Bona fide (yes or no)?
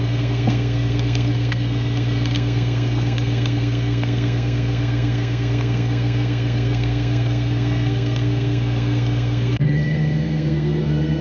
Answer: no